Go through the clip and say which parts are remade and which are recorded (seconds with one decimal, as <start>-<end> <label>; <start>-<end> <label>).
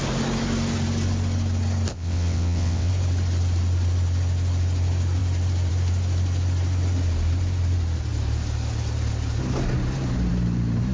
0.0-1.9 recorded; 1.9-2.9 remade; 2.9-10.9 recorded